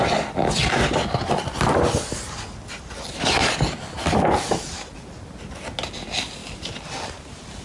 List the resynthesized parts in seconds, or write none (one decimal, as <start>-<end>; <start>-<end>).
none